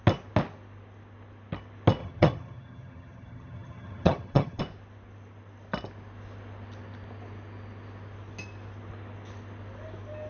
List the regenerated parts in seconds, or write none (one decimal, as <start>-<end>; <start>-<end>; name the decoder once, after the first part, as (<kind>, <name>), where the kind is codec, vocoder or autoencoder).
2.0-4.6 (vocoder, HiFi-GAN)